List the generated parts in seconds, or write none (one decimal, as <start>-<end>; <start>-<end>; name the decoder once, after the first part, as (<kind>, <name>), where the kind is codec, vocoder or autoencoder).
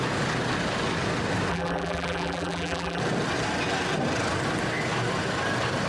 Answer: 1.5-3.0 (vocoder, BigVGAN v2)